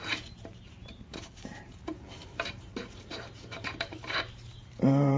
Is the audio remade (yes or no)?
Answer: yes